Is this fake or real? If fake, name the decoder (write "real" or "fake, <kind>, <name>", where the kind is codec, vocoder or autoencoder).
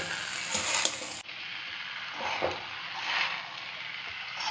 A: real